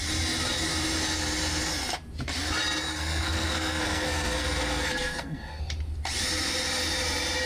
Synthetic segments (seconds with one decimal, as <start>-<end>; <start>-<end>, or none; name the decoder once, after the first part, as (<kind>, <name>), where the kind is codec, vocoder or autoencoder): 2.9-5.6 (codec, SNAC)